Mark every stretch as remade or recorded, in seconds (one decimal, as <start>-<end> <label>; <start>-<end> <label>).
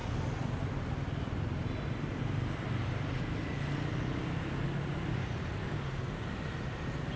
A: 0.0-7.2 recorded